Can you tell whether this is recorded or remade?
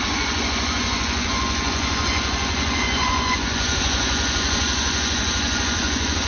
remade